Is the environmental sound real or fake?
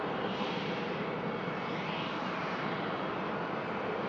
real